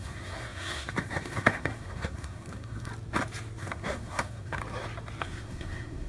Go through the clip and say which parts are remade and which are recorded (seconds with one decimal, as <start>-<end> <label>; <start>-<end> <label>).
0.0-2.9 remade; 2.9-3.6 recorded; 3.6-4.6 remade; 4.6-5.2 recorded; 5.2-6.1 remade